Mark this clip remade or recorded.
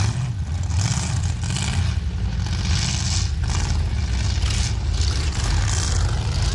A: recorded